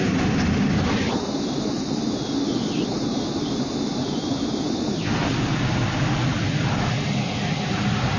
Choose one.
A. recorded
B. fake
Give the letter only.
A